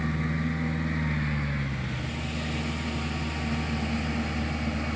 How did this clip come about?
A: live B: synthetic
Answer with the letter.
A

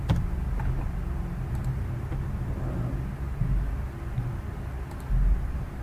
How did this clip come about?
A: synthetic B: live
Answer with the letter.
B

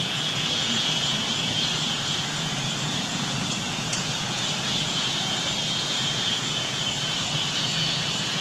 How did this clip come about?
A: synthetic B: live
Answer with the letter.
A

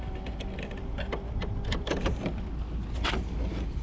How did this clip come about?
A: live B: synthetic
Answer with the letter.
A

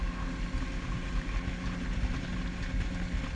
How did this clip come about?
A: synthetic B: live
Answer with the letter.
B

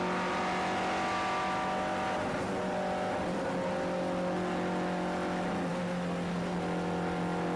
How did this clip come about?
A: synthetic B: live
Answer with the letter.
B